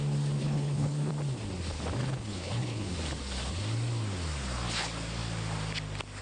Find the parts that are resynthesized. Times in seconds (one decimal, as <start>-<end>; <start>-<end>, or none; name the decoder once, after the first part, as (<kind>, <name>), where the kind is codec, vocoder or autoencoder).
0.4-1.1 (codec, HILCodec); 2.0-2.9